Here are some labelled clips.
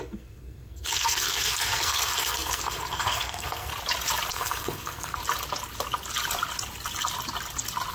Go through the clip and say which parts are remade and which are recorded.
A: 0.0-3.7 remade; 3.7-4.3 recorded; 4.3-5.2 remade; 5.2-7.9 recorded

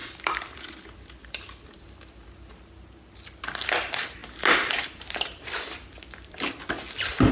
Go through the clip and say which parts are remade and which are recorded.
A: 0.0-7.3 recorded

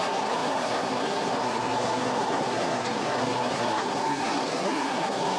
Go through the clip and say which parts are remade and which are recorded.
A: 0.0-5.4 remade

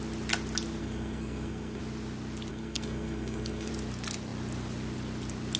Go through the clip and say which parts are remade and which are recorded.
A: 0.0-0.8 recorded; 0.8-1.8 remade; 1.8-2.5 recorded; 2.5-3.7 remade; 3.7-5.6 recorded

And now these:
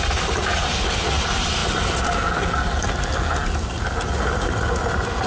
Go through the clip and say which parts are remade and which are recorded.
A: 0.0-5.3 recorded